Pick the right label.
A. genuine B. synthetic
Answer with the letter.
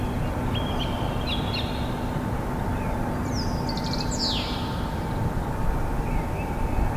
A